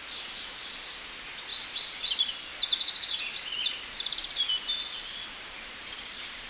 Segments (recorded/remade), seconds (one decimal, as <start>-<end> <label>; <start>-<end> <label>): 0.0-6.5 recorded